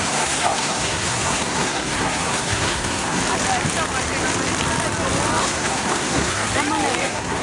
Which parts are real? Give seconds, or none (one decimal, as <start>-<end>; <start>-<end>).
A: 3.2-5.4; 6.5-7.0

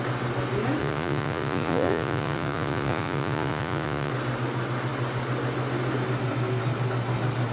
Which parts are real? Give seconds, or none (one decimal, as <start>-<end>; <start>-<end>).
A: 0.0-0.8; 4.1-7.5

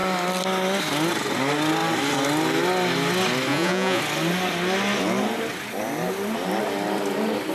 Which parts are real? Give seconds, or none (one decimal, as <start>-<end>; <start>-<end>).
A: 0.0-3.5; 4.0-7.5

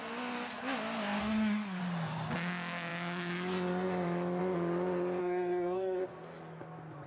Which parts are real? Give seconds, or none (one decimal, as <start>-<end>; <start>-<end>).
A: 0.0-1.2; 1.8-5.2; 6.0-7.1